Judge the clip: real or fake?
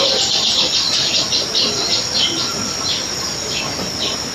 real